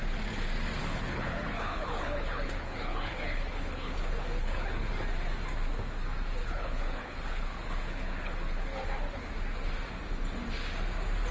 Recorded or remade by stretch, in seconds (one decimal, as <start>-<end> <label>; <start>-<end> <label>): 0.0-0.8 recorded; 0.8-4.9 remade; 4.9-6.4 recorded; 6.4-9.3 remade; 9.3-11.3 recorded